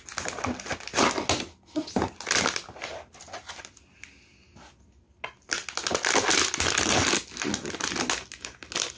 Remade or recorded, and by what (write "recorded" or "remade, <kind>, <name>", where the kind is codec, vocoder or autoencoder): recorded